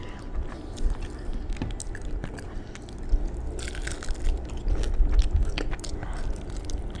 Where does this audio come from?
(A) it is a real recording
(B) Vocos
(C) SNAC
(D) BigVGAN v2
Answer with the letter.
A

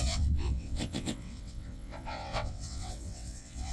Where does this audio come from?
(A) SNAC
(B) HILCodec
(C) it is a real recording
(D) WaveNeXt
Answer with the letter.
D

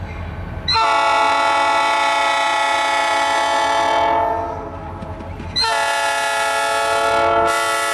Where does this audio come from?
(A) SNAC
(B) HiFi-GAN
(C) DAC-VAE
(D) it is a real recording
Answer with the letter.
D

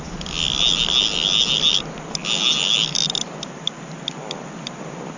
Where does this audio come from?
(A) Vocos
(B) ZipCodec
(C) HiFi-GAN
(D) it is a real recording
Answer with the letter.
D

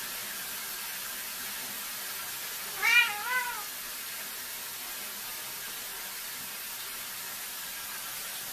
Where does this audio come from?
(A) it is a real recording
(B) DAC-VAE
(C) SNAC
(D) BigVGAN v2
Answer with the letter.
A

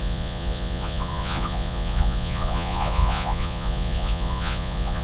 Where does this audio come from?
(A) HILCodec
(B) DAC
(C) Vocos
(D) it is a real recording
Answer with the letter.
C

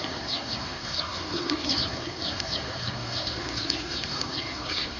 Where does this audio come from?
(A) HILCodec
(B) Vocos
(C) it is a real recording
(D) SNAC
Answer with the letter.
D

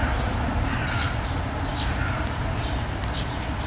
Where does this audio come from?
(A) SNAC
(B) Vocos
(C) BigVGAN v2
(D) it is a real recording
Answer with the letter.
D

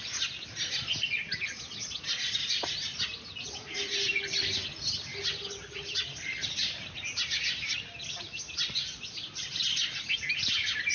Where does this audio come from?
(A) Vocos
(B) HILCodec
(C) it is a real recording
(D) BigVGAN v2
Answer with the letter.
C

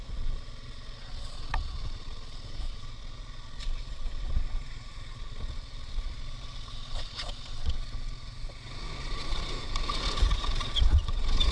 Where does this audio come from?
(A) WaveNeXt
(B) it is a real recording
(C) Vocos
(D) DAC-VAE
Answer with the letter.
C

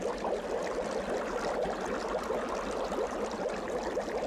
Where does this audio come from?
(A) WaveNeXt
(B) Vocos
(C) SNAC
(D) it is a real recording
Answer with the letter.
D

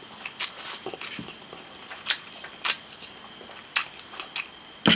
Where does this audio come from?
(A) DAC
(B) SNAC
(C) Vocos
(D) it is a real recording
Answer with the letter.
D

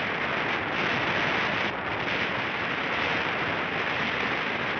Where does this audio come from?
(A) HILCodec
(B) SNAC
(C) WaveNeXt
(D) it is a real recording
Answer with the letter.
D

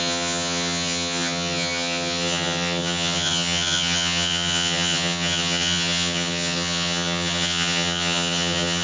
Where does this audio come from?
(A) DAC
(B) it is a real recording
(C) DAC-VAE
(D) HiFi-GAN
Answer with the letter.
D